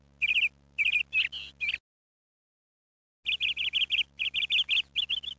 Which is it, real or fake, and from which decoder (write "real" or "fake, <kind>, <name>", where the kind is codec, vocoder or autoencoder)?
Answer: real